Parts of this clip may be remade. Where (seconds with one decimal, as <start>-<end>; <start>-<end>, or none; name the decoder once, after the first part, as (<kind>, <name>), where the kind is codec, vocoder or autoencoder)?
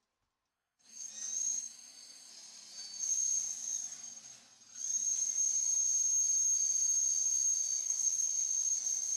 0.5-1.1 (codec, SNAC); 1.6-2.3; 7.8-8.3